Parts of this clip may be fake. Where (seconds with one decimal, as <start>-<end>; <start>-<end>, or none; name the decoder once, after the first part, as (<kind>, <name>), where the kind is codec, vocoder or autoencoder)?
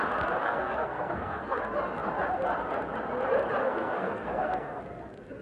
0.4-1.6 (codec, SNAC); 3.6-4.8